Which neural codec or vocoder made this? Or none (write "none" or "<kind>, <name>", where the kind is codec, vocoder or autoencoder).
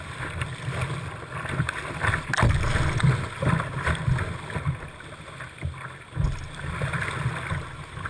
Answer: none